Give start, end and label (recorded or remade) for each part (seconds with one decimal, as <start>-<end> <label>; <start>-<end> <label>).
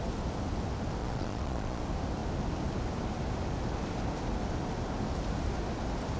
0.0-1.0 recorded; 1.0-1.8 remade; 1.8-6.2 recorded